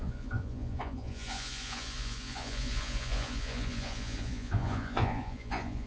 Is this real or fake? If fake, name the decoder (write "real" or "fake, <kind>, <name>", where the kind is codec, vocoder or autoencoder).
fake, vocoder, Vocos